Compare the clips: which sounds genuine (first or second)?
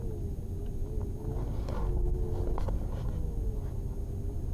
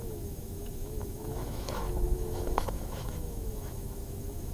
first